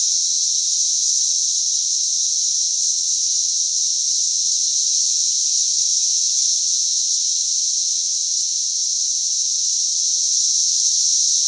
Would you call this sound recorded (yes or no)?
no